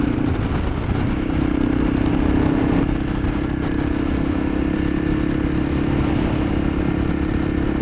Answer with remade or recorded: recorded